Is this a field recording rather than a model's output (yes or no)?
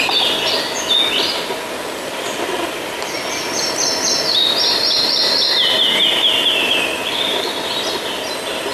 yes